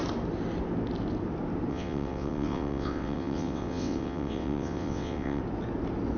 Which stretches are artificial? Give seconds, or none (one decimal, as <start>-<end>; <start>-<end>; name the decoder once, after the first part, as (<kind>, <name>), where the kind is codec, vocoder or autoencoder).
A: 1.7-5.4 (vocoder, WaveNeXt)